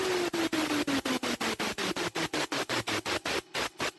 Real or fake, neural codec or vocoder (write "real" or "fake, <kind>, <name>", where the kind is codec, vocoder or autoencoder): real